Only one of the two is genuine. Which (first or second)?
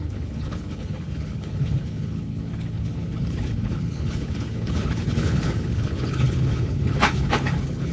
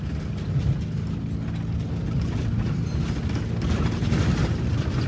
second